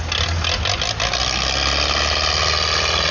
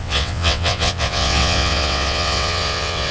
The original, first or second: first